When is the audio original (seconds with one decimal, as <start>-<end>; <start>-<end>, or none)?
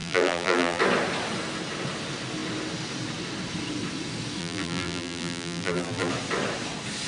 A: 0.8-4.4; 6.1-7.1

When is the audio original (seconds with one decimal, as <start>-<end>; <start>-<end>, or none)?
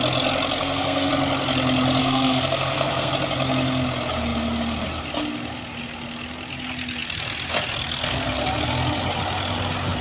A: 0.0-0.6; 1.1-2.0; 3.1-10.0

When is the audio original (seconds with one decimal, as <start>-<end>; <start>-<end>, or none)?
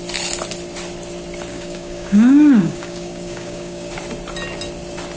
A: 0.0-1.5; 3.9-5.2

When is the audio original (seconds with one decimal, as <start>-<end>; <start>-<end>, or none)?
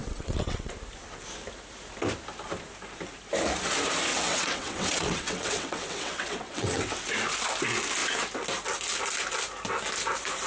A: 0.7-4.1; 6.8-10.5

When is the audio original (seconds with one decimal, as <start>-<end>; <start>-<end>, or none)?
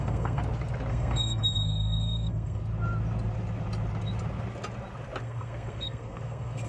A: 0.4-0.9; 2.6-5.2